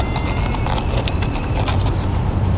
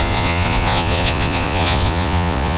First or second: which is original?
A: first